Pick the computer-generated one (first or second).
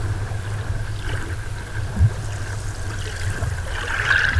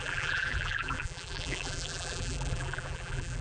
second